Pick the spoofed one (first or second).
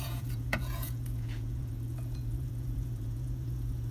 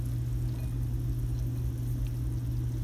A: first